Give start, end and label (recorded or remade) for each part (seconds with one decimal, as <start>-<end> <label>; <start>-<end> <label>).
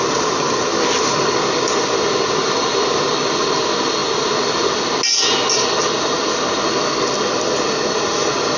0.0-8.6 recorded